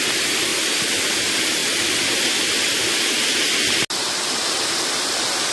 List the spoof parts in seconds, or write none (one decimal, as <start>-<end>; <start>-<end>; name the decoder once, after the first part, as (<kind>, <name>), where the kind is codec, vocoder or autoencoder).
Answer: none